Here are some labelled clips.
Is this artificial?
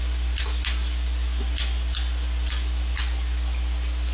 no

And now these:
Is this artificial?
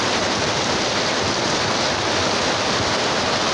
no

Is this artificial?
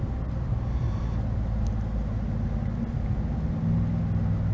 no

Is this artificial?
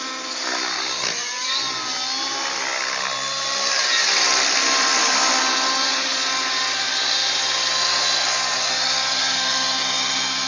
no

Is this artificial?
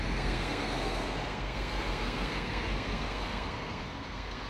yes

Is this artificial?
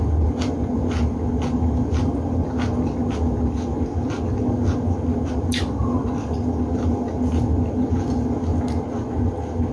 no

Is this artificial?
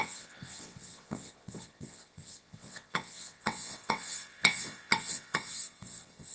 yes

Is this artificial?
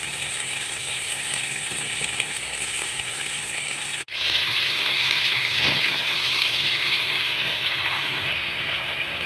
yes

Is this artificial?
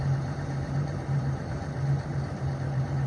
yes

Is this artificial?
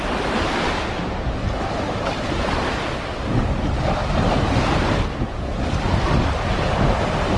no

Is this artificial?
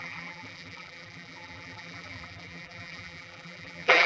yes